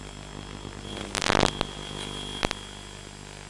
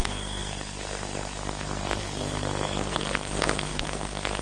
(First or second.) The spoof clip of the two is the second